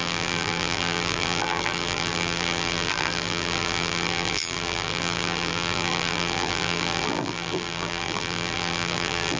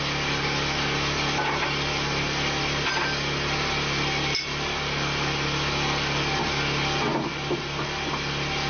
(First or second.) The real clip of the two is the second